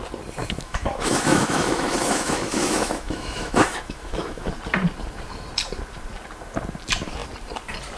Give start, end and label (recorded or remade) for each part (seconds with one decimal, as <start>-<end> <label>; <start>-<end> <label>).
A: 0.0-0.4 recorded; 0.4-4.5 remade; 4.5-8.0 recorded